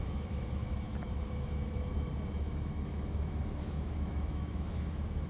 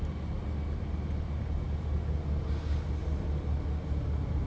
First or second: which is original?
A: second